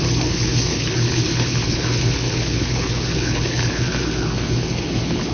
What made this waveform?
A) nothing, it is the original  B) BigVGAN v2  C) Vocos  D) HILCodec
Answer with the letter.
D